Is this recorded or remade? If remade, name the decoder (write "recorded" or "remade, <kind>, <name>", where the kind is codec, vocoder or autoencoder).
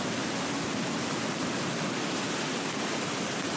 recorded